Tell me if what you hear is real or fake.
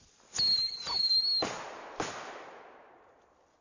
real